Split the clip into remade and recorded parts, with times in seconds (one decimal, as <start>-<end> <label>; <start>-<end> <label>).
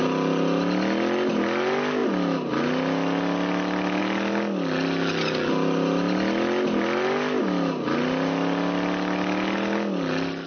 0.0-10.5 recorded